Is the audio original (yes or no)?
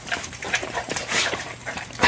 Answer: no